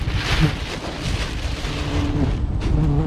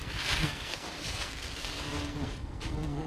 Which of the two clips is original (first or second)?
first